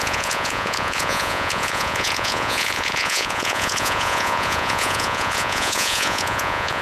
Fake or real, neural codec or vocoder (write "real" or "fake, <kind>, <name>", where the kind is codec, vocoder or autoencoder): fake, vocoder, Vocos